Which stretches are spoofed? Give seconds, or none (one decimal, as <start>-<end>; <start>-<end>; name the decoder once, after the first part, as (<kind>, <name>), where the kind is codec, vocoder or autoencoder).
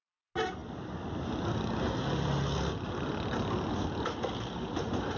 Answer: none